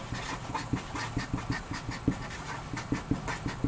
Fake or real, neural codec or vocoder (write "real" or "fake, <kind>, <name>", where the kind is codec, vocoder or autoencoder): real